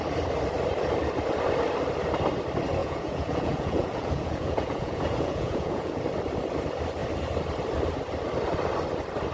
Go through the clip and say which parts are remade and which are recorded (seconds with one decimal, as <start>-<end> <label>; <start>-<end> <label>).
0.0-2.8 recorded; 2.8-6.0 remade; 6.0-9.3 recorded